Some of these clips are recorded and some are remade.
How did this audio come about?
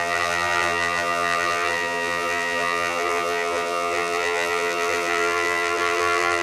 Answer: remade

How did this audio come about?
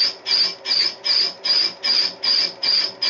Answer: recorded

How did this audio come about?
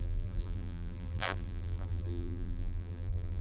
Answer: remade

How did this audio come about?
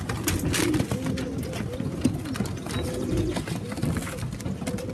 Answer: recorded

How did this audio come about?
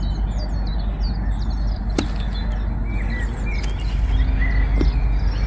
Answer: recorded